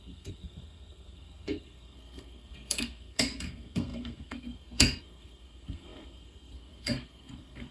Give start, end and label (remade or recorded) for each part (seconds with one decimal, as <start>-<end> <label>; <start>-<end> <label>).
0.0-7.7 remade